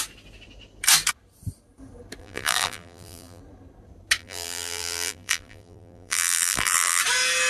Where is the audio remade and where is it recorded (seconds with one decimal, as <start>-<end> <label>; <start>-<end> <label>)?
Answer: 0.0-2.2 recorded; 2.2-3.4 remade; 3.4-4.2 recorded; 4.2-7.0 remade; 7.0-7.5 recorded